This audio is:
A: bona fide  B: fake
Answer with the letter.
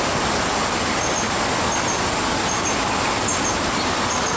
A